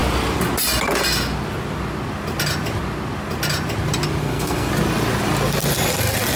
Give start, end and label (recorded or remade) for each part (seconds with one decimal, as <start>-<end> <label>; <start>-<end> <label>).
0.0-4.2 recorded; 4.2-4.7 remade; 4.7-6.4 recorded